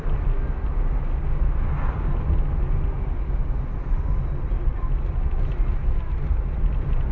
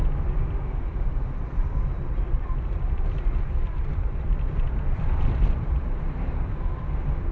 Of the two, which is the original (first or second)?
first